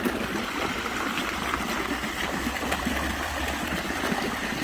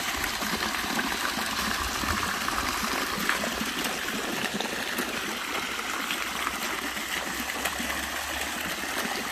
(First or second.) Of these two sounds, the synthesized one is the first